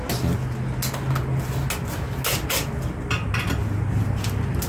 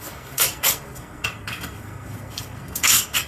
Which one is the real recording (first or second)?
first